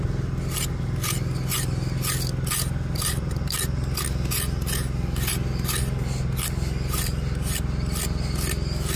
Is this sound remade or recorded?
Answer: recorded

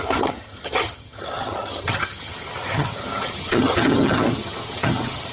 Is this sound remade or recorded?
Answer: remade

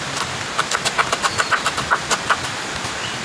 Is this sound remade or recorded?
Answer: recorded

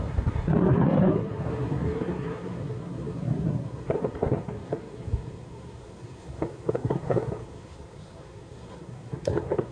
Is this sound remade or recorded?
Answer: remade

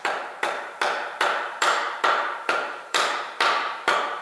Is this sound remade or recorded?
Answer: remade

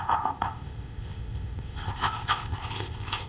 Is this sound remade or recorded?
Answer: remade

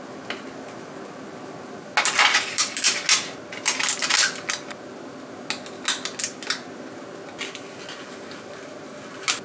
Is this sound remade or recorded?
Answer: recorded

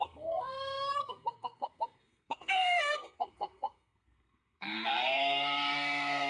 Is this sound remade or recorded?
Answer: remade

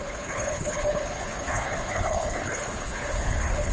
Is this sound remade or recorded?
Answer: remade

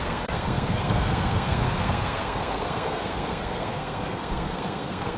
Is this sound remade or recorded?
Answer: remade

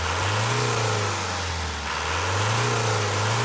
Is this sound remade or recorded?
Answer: recorded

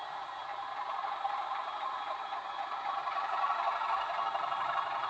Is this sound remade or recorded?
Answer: remade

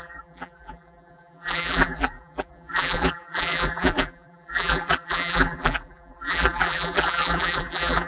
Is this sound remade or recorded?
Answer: remade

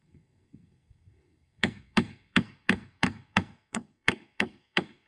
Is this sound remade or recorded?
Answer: remade